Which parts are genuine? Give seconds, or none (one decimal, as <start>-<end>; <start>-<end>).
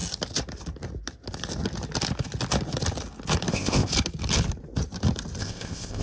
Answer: 0.0-3.5; 3.9-5.4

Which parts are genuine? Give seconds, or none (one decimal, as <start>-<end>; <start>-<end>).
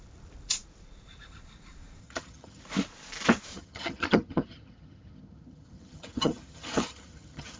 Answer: 0.0-2.0; 2.6-3.5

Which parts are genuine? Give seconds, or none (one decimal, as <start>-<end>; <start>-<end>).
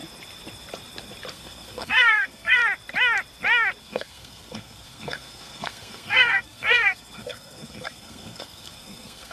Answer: 0.0-1.3; 2.6-3.8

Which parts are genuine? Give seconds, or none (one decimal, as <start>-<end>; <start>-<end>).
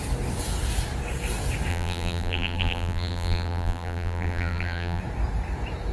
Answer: 0.0-1.7; 5.0-5.9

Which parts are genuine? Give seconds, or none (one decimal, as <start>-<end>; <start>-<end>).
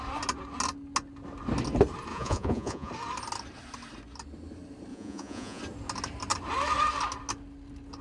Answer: 0.0-2.1; 2.9-4.9; 5.6-8.0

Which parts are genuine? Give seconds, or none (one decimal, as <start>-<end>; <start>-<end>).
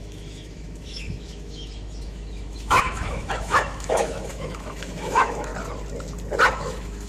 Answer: 5.5-6.5